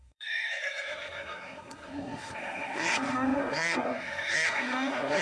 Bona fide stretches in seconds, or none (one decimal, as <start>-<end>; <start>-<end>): none